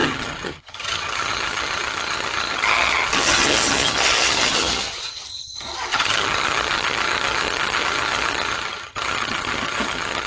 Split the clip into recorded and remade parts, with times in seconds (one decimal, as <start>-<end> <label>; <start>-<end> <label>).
0.0-10.3 remade